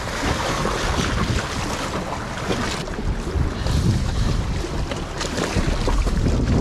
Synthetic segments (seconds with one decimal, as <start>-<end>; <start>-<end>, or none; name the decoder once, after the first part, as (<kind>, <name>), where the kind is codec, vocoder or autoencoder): none